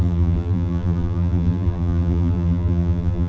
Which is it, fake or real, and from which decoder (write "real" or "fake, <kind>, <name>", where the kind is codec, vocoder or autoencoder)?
fake, vocoder, BigVGAN v2